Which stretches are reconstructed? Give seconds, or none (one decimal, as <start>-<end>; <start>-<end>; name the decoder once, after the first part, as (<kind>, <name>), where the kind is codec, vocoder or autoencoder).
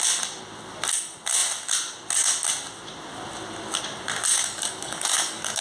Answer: 4.3-5.6 (codec, DAC)